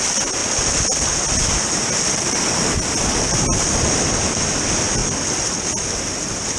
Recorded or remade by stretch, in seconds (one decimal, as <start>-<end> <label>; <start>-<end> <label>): 0.0-6.6 recorded